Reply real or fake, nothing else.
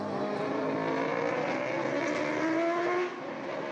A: real